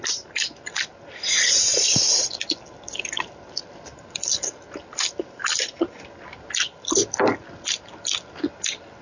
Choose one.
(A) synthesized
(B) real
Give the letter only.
B